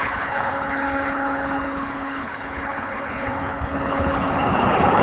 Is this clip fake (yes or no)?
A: yes